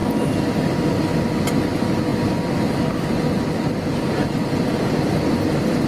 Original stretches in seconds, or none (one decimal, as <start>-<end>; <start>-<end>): 0.0-5.9